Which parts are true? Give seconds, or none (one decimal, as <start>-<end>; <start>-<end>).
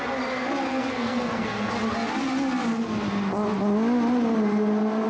0.0-0.7; 1.7-5.1